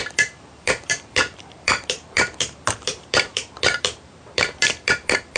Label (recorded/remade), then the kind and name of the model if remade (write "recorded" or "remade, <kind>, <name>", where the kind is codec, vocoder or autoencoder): remade, vocoder, BigVGAN v2